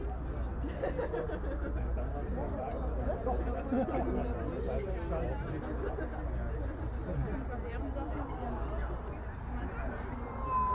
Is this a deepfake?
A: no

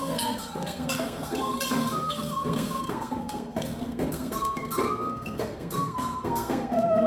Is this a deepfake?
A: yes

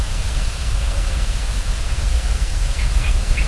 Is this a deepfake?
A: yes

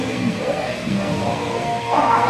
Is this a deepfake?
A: yes